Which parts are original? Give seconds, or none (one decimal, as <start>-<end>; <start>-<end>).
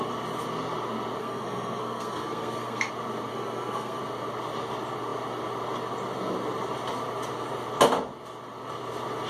0.0-1.2; 2.9-3.3; 4.0-9.3